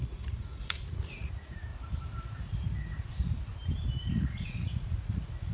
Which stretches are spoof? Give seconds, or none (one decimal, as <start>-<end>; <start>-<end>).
0.0-1.7; 2.4-3.5; 4.1-5.5